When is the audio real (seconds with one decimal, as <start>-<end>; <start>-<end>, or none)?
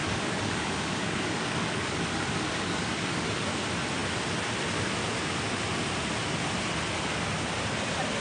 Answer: 3.6-8.2